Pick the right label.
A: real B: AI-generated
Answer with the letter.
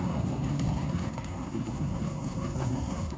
B